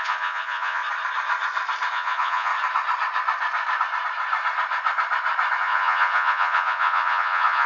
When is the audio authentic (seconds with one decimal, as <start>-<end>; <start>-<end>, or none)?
0.8-1.9; 2.5-5.6